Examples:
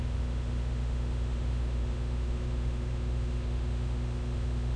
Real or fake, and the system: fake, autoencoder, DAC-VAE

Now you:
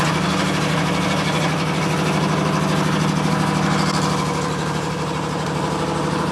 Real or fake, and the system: real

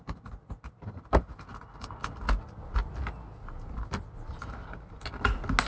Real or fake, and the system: real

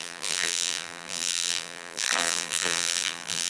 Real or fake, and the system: fake, vocoder, BigVGAN v2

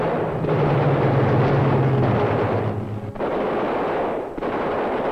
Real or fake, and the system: real